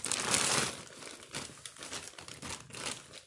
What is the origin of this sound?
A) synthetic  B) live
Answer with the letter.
B